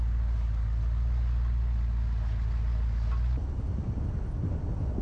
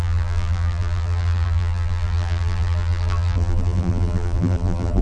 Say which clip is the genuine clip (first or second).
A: first